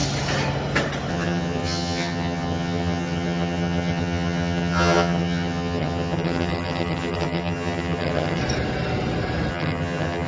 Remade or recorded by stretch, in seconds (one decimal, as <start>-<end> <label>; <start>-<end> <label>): 0.0-1.1 recorded; 1.1-8.4 remade; 8.4-9.5 recorded; 9.5-10.3 remade